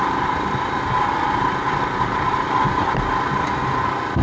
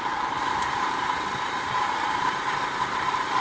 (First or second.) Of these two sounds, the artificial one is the second